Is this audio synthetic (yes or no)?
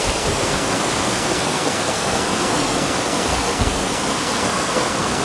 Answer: yes